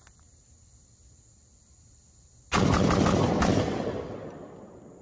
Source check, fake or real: real